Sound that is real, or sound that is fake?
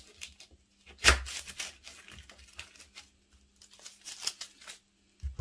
real